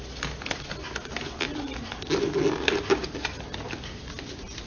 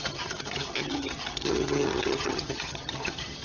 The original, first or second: first